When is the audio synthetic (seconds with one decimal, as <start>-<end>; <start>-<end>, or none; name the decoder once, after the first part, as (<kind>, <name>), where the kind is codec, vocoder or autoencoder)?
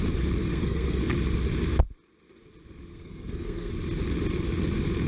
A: 0.5-1.0 (codec, SNAC); 2.9-3.7